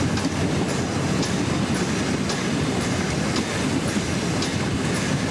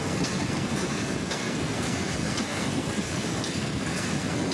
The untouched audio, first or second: first